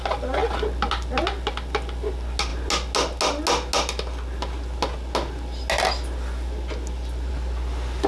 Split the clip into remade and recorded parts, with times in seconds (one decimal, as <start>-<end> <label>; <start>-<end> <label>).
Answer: 0.0-8.1 recorded